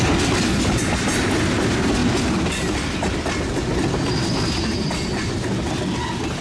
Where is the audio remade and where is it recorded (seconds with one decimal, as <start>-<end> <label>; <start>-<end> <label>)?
0.0-6.4 recorded